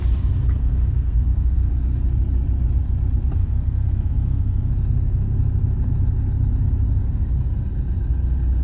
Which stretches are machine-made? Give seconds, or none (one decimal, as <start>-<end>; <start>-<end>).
0.6-1.7; 3.4-4.7